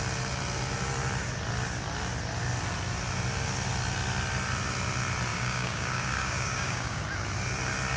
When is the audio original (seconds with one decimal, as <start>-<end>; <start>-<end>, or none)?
0.0-5.3; 7.0-8.0